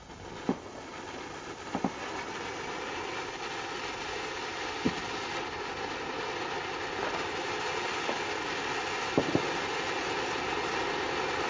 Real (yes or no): yes